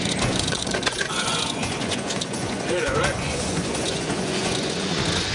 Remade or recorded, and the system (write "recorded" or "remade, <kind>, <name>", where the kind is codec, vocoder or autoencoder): remade, vocoder, Vocos